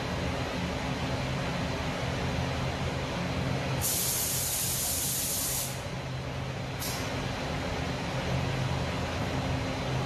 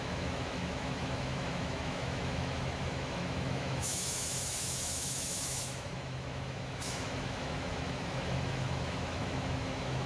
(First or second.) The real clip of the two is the first